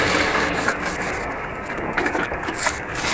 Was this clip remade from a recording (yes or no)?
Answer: yes